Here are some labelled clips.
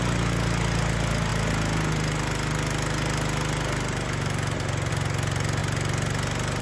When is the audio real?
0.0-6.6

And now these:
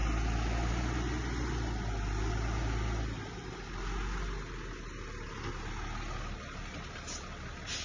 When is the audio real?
0.0-7.8

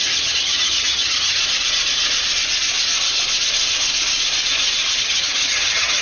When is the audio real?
1.4-5.0

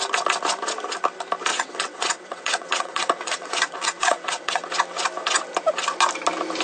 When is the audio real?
0.0-1.5; 4.6-6.6